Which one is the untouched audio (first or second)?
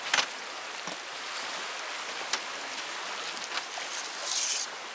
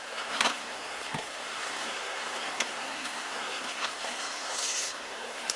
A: first